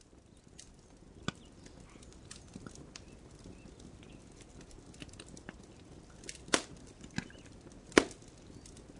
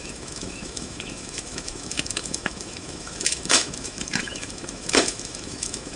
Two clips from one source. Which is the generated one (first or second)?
second